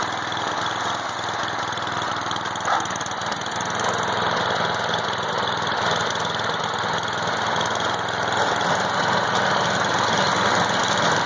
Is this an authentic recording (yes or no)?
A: yes